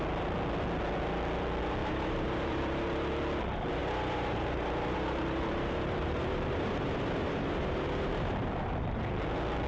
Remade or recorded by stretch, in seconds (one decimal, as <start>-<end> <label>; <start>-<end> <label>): 0.0-1.8 recorded; 1.8-2.6 remade; 2.6-3.8 recorded; 3.8-9.0 remade; 9.0-9.7 recorded